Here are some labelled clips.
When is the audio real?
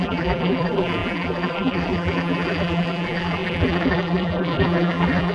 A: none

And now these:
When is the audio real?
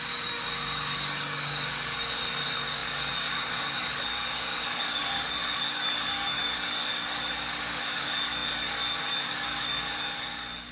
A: none